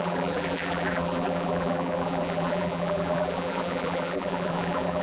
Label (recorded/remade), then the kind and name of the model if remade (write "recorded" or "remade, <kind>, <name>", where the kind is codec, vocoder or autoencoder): remade, vocoder, BigVGAN v2